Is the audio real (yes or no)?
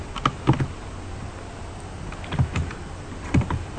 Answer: yes